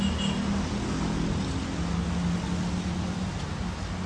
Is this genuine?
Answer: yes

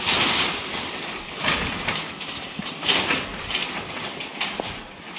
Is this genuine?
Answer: yes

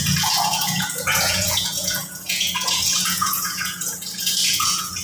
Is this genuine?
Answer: no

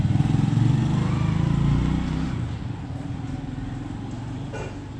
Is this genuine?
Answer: yes